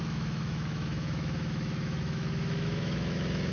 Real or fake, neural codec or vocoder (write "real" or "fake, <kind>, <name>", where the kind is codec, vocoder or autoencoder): fake, autoencoder, DAC-VAE